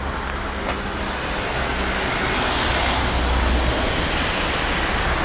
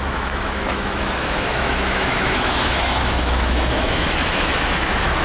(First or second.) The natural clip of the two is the first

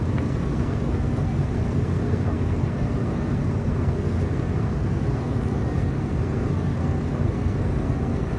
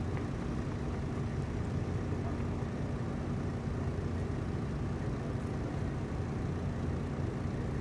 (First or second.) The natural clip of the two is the second